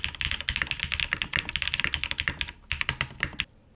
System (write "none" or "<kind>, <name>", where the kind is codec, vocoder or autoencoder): none